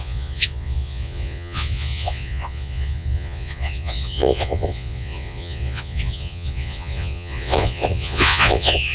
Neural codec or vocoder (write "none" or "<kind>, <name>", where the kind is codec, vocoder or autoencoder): vocoder, Vocos